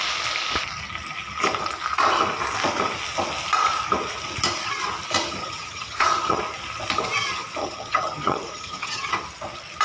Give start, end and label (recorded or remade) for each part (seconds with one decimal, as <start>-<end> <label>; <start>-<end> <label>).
0.0-5.4 recorded; 5.4-6.4 remade; 6.4-7.6 recorded; 7.6-9.1 remade; 9.1-9.8 recorded

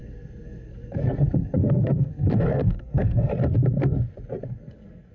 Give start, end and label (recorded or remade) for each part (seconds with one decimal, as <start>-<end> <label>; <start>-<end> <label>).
0.0-3.3 remade; 3.3-4.4 recorded; 4.4-5.1 remade

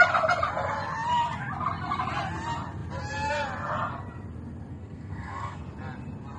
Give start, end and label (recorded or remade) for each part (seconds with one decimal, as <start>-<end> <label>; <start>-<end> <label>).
0.0-4.7 recorded; 4.7-5.6 remade; 5.6-6.4 recorded

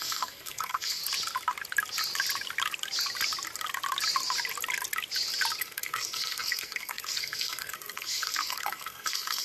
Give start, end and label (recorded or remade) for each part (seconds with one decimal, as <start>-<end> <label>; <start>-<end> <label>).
0.0-1.0 remade; 1.0-5.6 recorded; 5.6-9.4 remade